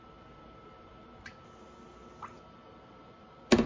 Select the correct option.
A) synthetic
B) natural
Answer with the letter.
B